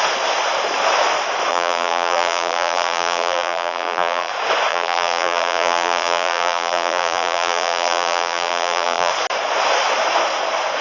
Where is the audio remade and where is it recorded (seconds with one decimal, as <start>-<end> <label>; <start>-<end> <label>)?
0.0-1.5 recorded; 1.5-4.3 remade; 4.3-4.7 recorded; 4.7-9.1 remade; 9.1-10.8 recorded